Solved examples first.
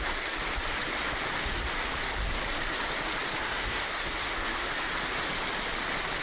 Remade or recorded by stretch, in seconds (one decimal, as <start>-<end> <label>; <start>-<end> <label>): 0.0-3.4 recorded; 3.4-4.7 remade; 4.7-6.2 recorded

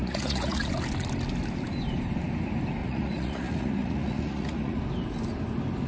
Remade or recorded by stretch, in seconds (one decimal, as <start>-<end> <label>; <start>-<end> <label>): 0.0-0.7 remade; 0.7-2.8 recorded; 2.8-4.8 remade; 4.8-5.9 recorded

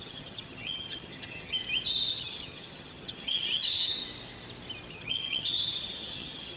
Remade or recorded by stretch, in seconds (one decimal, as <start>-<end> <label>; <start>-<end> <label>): 0.0-1.6 remade; 1.6-2.1 recorded; 2.1-4.0 remade; 4.0-4.9 recorded; 4.9-6.6 remade

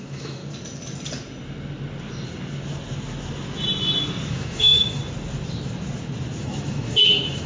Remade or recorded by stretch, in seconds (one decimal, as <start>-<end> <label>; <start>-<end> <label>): 0.0-0.4 remade; 0.4-4.3 recorded; 4.3-5.0 remade; 5.0-6.4 recorded; 6.4-7.5 remade